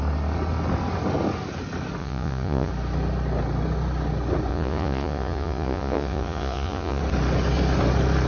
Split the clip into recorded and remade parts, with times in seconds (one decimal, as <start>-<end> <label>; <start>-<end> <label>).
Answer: 0.0-2.0 recorded; 2.0-2.7 remade; 2.7-4.5 recorded; 4.5-7.0 remade; 7.0-8.3 recorded